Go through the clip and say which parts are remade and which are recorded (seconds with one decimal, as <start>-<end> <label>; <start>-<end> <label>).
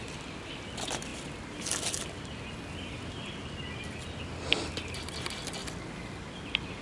0.0-6.8 recorded